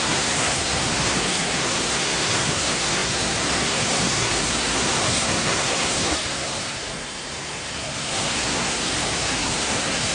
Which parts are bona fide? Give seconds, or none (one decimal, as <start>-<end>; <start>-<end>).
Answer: none